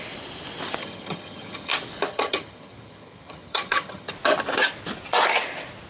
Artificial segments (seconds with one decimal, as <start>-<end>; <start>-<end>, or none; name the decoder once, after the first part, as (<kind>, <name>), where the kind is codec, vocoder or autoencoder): 0.8-1.7 (vocoder, HiFi-GAN); 2.1-4.1